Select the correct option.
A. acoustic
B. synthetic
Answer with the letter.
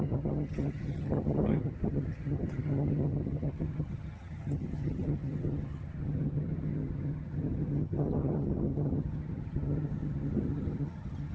B